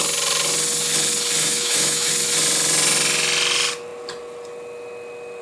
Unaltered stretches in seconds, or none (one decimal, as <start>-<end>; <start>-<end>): 0.0-1.4; 2.1-5.4